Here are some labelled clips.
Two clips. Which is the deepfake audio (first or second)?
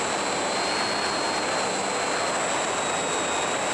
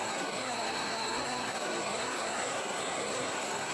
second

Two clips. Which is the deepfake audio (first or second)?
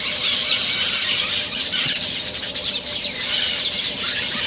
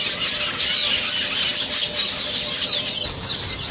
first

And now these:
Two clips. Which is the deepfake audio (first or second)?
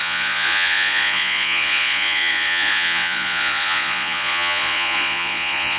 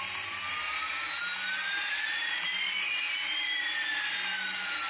first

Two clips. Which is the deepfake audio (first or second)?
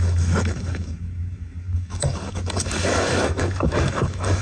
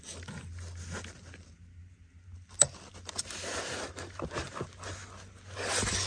first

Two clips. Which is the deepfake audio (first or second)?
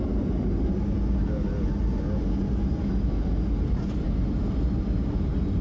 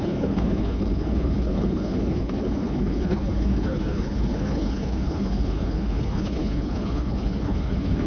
second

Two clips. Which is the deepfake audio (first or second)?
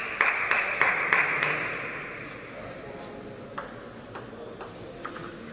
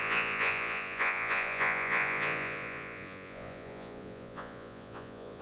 second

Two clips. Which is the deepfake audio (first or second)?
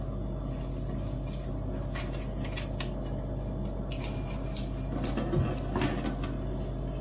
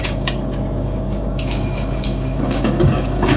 second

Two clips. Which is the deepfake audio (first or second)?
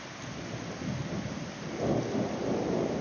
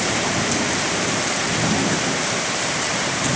second